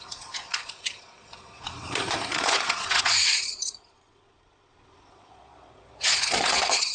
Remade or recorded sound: remade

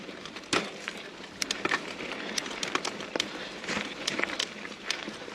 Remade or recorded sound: remade